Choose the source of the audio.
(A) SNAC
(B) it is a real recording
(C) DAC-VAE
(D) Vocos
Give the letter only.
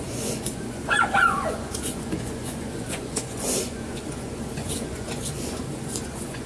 D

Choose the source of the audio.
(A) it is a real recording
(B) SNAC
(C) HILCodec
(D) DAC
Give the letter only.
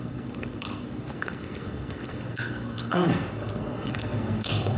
B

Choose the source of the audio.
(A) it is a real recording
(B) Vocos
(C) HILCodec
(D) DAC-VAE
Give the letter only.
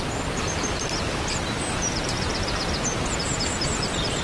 A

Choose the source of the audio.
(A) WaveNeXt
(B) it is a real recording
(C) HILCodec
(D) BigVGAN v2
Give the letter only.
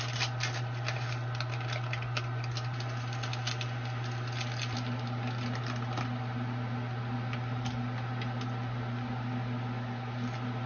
B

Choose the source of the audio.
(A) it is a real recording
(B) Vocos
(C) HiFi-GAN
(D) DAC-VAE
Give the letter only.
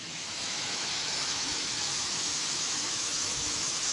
D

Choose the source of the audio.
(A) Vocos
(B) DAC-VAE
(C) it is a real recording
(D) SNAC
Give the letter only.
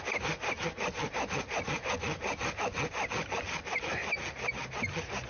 C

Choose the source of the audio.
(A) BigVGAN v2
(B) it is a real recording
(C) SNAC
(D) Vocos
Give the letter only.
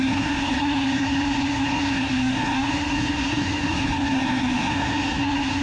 C